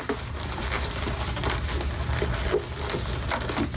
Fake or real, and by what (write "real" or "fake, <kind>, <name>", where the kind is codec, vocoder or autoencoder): real